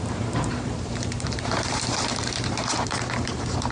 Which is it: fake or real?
fake